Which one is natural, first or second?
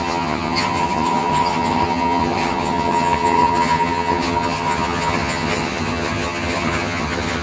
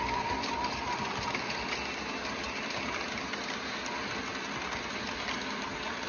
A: second